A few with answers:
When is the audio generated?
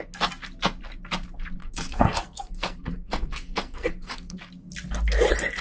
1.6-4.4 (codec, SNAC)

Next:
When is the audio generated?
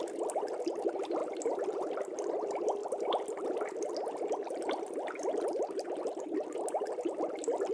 none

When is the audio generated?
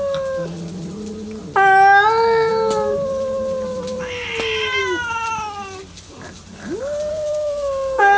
7.1-8.2 (codec, SNAC)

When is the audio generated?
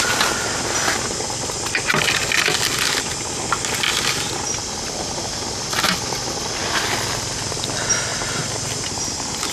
none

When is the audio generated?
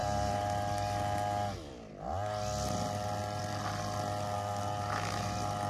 none